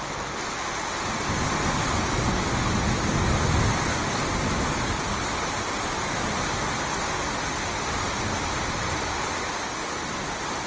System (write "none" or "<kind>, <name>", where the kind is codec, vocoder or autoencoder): none